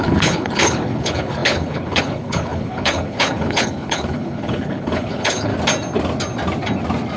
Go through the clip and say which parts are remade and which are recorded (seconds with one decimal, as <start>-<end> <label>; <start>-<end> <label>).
0.0-5.5 remade; 5.5-7.2 recorded